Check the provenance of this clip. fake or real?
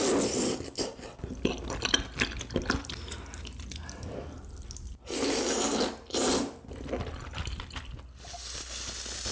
real